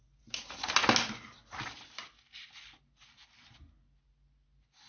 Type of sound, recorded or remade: recorded